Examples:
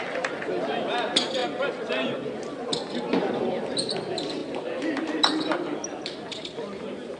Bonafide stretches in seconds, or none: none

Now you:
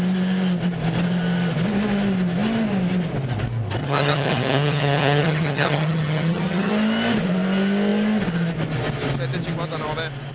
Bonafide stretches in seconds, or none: 0.0-3.8; 6.7-10.3

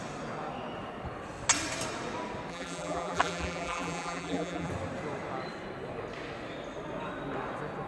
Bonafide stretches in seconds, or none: 0.0-2.5; 4.7-7.9

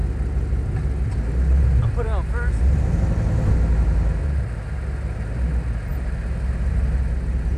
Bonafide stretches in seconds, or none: 0.0-7.6

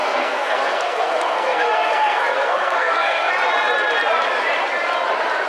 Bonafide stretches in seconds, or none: 3.3-5.5

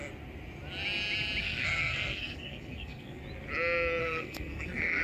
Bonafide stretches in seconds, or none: 0.0-1.4; 3.2-4.0

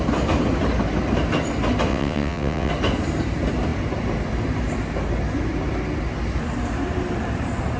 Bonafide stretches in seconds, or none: 0.0-1.9; 2.7-7.8